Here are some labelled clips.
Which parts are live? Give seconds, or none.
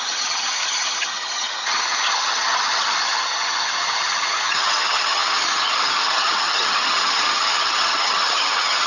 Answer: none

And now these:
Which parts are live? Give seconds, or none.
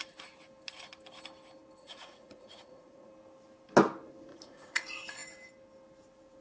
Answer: 0.0-1.8; 3.1-4.3; 4.8-6.4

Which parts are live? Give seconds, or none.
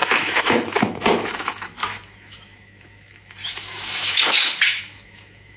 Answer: none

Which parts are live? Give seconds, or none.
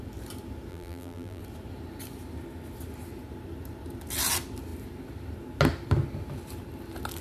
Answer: 0.0-0.7; 1.4-7.2